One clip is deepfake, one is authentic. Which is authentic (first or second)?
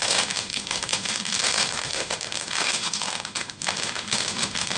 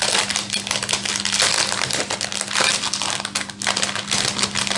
second